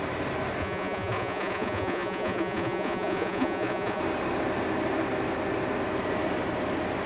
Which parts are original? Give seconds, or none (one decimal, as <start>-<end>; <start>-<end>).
0.0-0.6; 4.0-7.1